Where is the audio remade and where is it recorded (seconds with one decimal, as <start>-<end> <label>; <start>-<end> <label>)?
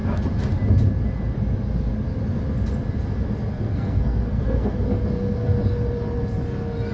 0.0-3.5 recorded; 3.5-5.0 remade; 5.0-6.9 recorded